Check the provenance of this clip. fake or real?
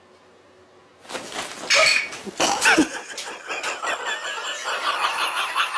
real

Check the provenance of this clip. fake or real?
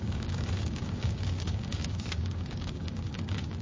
fake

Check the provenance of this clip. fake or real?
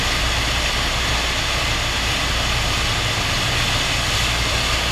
real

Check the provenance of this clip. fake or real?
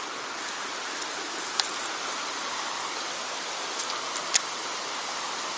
real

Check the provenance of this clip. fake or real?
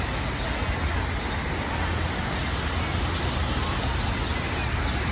real